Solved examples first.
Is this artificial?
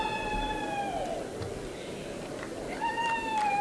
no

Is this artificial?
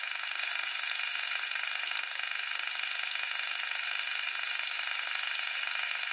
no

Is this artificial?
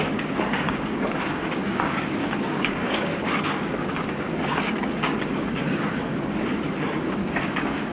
yes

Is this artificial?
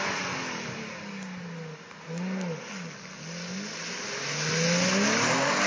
no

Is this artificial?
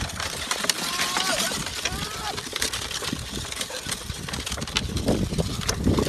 yes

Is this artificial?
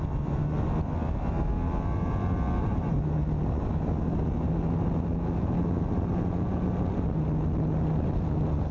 no